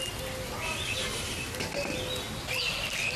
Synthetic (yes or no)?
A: no